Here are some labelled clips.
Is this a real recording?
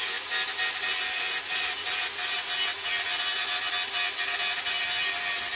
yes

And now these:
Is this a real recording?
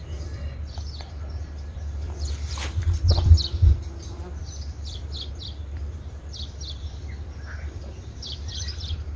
no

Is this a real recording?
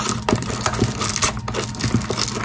yes